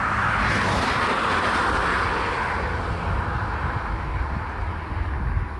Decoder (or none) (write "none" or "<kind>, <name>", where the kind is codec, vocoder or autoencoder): none